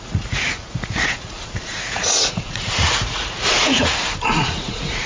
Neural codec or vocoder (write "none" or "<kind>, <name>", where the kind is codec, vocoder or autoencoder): vocoder, Vocos